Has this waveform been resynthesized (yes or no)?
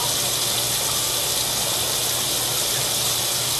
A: no